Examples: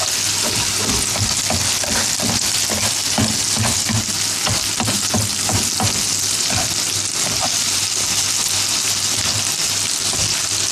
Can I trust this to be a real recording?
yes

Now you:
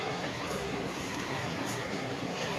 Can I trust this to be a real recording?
no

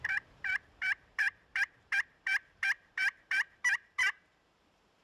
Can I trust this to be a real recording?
no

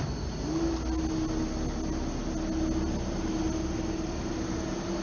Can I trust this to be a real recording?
yes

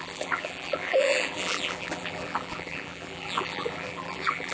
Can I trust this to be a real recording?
no